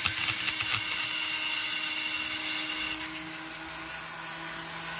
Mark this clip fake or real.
real